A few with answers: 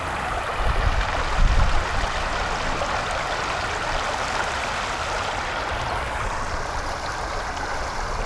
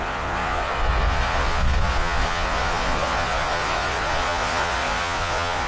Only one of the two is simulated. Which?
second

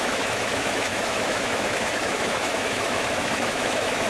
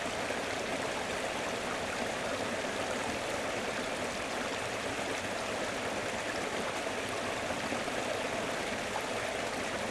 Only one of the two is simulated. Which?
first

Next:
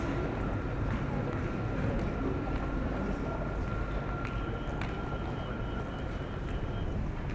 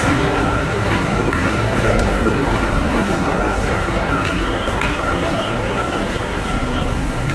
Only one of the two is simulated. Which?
second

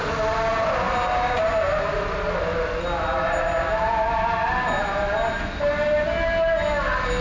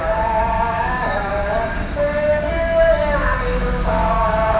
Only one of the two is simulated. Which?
second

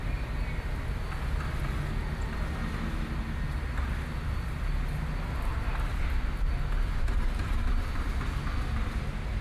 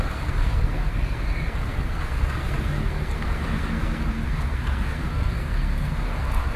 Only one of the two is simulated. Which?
second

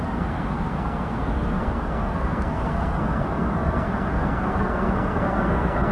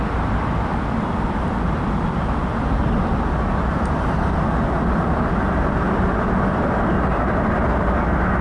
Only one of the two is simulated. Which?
first